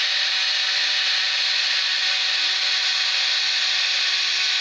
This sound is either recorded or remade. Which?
recorded